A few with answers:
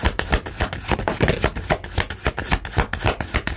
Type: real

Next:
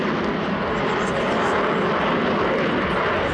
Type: real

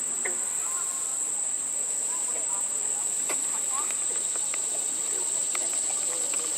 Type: real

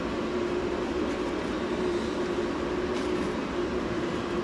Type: real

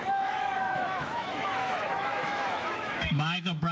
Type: fake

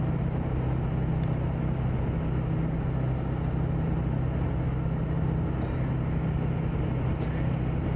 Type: real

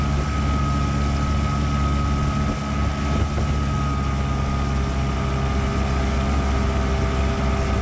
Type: real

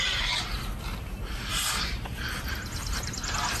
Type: real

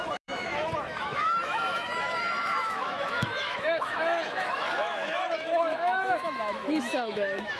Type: fake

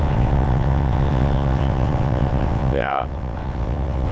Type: fake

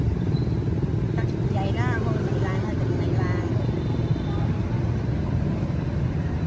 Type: real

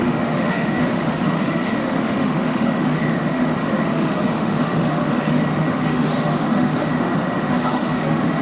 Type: fake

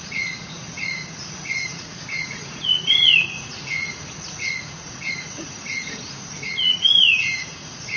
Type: fake